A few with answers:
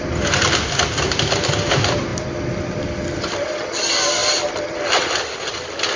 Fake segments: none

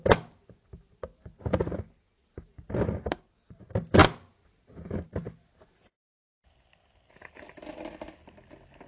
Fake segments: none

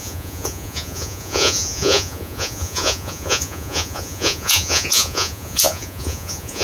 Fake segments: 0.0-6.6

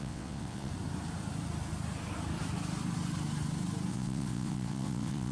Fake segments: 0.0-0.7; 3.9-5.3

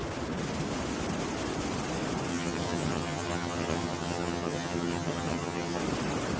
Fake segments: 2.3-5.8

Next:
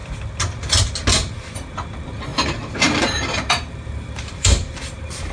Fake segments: 1.3-5.3

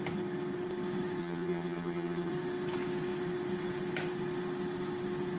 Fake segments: 1.2-2.3

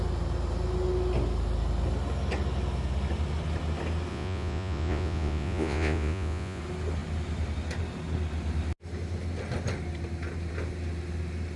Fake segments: 4.1-6.6